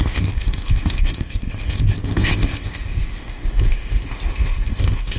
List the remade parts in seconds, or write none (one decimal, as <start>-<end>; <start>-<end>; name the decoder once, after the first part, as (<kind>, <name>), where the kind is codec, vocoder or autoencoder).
0.0-5.2 (codec, ZipCodec)